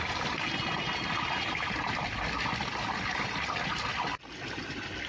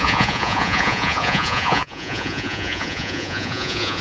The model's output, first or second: second